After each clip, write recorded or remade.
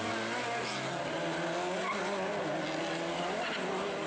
recorded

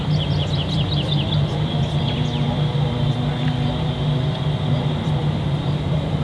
remade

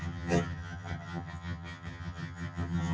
remade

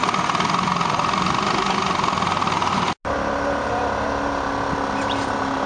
recorded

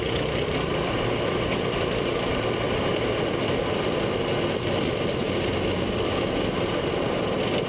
recorded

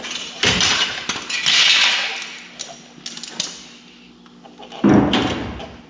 recorded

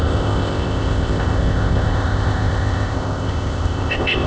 remade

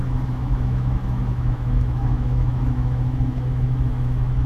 remade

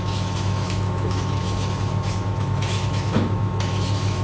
remade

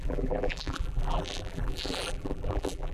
remade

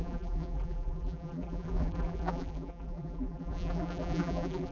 remade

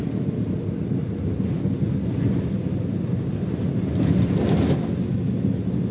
recorded